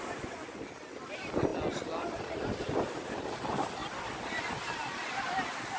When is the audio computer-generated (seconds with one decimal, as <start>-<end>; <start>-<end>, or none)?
none